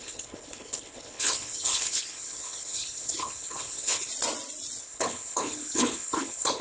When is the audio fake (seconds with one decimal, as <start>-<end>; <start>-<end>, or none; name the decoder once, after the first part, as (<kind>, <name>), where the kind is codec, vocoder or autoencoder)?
0.0-4.1 (codec, HILCodec); 4.8-6.6

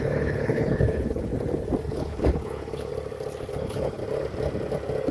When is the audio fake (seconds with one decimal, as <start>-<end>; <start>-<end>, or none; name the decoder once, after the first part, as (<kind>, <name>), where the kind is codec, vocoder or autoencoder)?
0.0-1.3 (codec, HILCodec); 1.9-2.9; 3.5-4.0